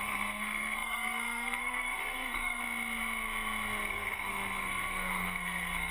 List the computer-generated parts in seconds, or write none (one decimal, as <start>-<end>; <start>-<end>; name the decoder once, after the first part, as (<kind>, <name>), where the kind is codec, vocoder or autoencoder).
0.0-2.6 (codec, SNAC); 3.9-5.9